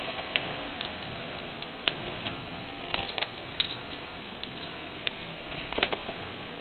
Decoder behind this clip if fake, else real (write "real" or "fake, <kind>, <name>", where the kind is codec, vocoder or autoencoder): fake, codec, SNAC